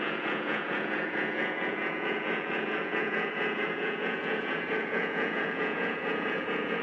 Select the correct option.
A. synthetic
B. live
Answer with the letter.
A